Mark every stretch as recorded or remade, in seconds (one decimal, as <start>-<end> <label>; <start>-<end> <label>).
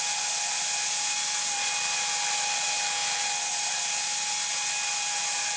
0.0-5.6 recorded